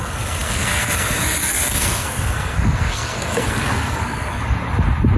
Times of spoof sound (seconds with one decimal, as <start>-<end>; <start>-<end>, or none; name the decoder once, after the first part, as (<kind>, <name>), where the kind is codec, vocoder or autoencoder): 0.0-4.4 (codec, SNAC)